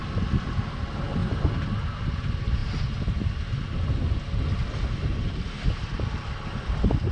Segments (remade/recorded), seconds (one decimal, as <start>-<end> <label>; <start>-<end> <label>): 0.0-7.1 recorded